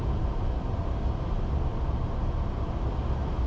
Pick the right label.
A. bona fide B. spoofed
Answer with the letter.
A